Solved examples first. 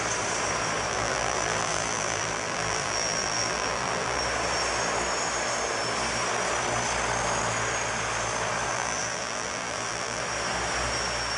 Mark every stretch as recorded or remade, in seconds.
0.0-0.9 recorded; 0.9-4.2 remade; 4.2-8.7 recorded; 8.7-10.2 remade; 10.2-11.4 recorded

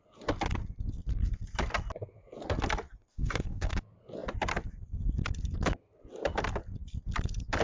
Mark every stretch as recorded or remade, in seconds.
0.0-3.1 recorded; 3.1-3.8 remade; 3.8-7.6 recorded

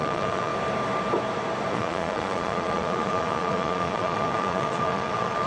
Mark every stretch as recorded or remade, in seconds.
0.0-0.5 remade; 0.5-1.7 recorded; 1.7-5.5 remade

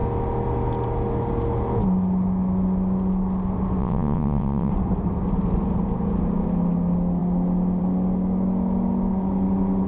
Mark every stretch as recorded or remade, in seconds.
0.0-3.8 recorded; 3.8-4.7 remade; 4.7-9.9 recorded

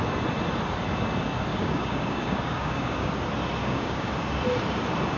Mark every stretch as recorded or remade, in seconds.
0.0-1.5 recorded; 1.5-3.1 remade; 3.1-3.6 recorded; 3.6-4.1 remade; 4.1-5.2 recorded

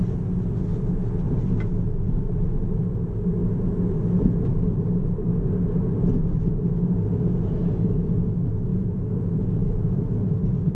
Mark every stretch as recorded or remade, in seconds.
0.0-8.7 recorded; 8.7-10.7 remade